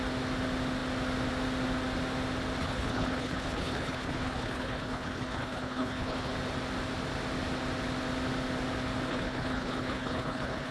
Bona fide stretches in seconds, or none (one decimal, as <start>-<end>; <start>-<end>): 0.0-2.6; 6.3-9.1